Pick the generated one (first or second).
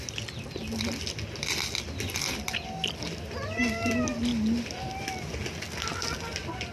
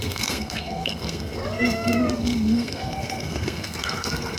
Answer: second